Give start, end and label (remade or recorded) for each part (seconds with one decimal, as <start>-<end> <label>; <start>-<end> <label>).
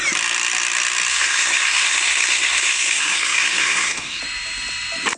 0.0-1.1 recorded; 1.1-4.2 remade; 4.2-5.2 recorded